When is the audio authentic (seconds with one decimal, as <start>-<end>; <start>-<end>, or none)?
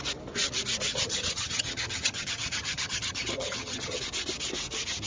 0.0-0.9; 4.0-5.1